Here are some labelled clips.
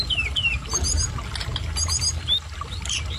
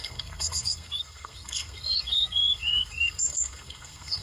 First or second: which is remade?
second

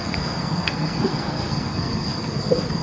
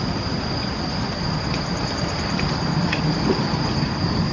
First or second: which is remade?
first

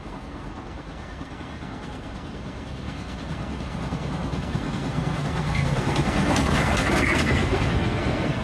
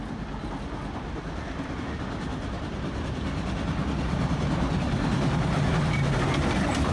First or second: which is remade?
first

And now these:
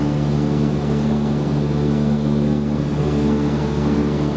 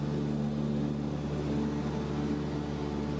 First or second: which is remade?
first